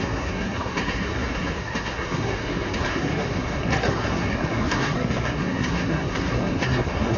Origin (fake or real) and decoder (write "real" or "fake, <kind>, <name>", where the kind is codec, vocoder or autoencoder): fake, codec, SNAC